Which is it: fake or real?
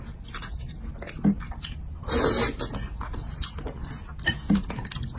real